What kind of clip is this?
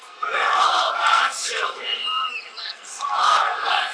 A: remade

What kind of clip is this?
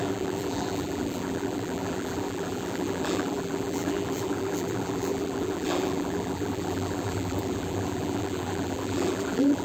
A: remade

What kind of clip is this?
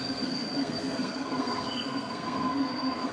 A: remade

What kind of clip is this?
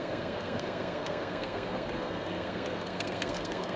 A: remade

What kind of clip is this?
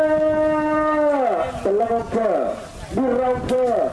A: recorded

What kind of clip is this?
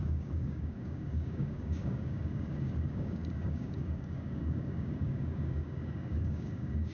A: remade